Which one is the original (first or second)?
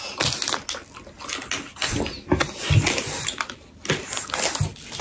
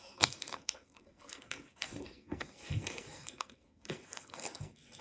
first